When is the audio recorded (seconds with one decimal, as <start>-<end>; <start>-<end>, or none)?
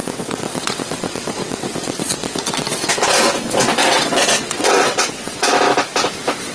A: 2.9-3.8; 5.5-6.5